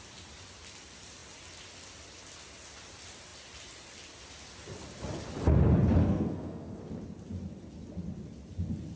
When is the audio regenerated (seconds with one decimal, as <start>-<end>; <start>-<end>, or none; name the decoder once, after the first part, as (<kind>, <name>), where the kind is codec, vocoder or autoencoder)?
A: 6.0-6.8 (codec, SNAC)